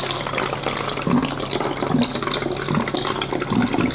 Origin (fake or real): real